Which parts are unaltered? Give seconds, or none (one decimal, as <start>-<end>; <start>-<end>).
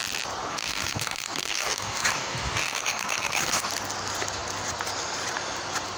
0.0-0.5; 3.7-6.0